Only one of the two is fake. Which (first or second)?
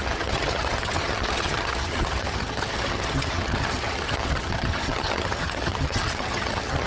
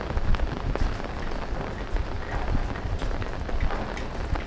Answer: first